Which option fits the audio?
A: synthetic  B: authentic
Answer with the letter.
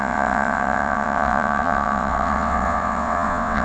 A